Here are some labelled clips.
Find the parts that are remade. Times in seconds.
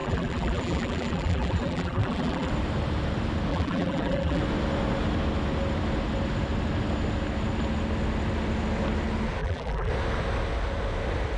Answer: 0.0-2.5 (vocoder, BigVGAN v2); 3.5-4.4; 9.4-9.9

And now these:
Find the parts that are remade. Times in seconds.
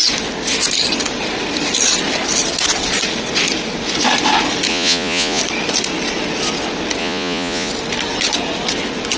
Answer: 4.7-5.4 (vocoder, Vocos); 7.0-7.7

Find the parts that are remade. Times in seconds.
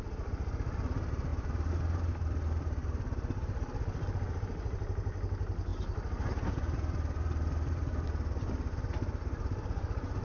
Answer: 0.0-5.7 (vocoder, BigVGAN v2); 6.5-10.2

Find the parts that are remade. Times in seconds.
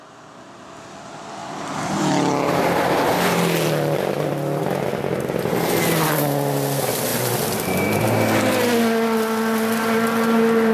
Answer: 1.4-2.6 (vocoder, BigVGAN v2); 3.1-4.6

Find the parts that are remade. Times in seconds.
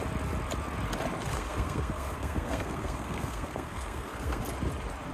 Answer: 1.3-4.4 (codec, SNAC)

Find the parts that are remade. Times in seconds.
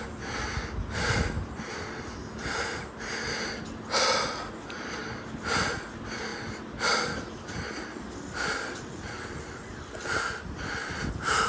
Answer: 6.3-9.7 (vocoder, BigVGAN v2); 10.8-11.5